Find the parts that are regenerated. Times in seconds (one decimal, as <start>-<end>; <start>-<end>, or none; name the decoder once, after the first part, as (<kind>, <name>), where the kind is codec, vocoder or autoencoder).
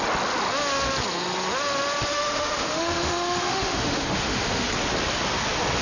2.1-4.7 (autoencoder, DAC-VAE)